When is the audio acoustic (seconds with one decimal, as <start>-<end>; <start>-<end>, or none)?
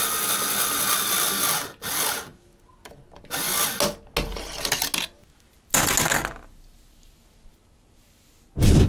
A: 0.0-8.9